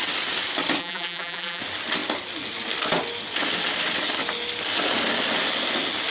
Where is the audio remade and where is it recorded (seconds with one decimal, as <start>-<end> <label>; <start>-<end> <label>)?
0.0-0.8 recorded; 0.8-1.6 remade; 1.6-6.1 recorded